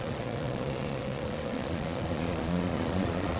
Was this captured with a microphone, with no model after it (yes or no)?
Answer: no